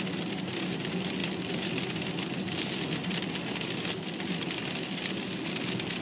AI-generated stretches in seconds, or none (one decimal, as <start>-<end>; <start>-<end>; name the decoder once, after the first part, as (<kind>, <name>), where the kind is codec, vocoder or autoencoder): none